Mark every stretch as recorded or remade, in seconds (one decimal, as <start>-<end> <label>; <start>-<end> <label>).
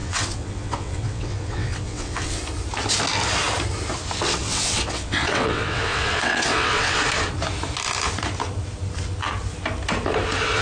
0.0-2.4 remade; 2.4-4.4 recorded; 4.4-7.0 remade; 7.0-10.6 recorded